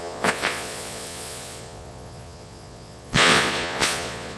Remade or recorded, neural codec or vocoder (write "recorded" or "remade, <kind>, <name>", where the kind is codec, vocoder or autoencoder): remade, vocoder, Vocos